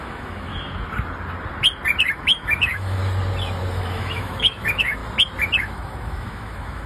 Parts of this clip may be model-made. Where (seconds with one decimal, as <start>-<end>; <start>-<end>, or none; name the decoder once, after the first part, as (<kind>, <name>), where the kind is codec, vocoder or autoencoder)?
0.0-0.5 (autoencoder, DAC-VAE); 2.1-3.0; 3.7-5.0; 5.6-6.9